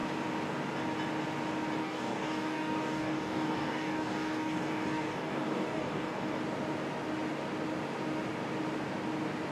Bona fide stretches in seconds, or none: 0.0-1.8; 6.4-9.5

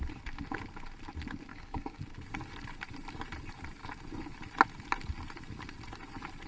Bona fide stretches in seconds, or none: 0.0-1.5; 2.0-6.5